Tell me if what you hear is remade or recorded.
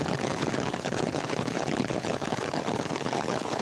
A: remade